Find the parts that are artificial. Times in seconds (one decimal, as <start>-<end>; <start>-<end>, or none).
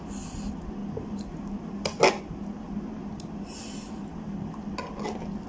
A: none